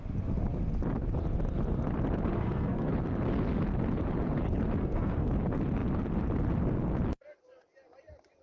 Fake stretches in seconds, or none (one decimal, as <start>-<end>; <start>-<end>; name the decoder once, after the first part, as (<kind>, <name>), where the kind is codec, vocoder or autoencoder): 2.3-2.9 (codec, SNAC); 4.8-5.3